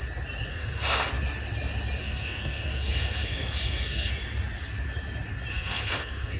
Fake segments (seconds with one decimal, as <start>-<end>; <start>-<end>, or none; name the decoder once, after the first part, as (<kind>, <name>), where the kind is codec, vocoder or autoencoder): 0.5-1.1 (codec, SNAC); 2.0-4.1; 5.5-6.4